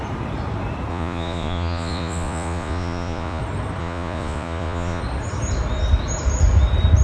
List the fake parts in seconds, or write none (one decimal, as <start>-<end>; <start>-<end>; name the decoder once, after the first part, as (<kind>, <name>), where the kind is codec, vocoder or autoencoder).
0.9-3.4 (vocoder, Vocos); 3.8-5.0